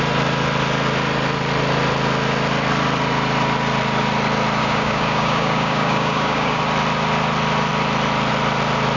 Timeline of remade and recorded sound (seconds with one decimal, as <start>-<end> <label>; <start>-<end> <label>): 0.0-4.6 recorded; 4.6-6.6 remade; 6.6-9.0 recorded